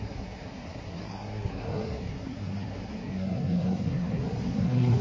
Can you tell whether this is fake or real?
fake